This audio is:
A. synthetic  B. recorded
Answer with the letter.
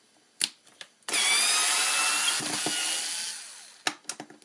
B